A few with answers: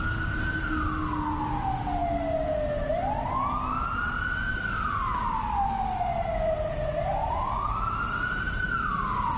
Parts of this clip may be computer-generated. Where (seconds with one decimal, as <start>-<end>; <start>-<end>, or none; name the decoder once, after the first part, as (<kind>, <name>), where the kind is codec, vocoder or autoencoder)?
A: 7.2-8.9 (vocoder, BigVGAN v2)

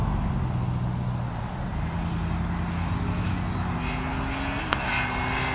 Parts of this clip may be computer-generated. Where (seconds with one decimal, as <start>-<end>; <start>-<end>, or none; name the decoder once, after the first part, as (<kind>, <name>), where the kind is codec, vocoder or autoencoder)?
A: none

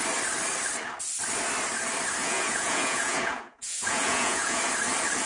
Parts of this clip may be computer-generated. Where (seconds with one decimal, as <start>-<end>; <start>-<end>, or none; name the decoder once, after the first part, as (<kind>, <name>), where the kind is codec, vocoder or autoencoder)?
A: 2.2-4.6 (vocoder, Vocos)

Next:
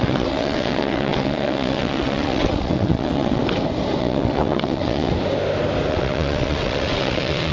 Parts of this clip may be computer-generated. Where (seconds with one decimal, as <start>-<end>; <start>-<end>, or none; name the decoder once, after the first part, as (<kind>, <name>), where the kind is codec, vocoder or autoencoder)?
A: 0.0-3.4 (vocoder, WaveNeXt); 4.0-5.1; 5.9-7.5

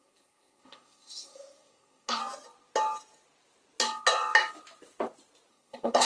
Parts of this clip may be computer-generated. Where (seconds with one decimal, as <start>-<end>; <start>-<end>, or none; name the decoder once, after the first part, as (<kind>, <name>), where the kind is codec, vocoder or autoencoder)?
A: 0.0-2.2 (codec, SNAC); 5.5-6.0